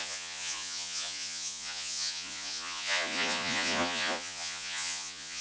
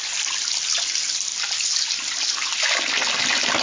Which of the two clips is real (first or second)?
second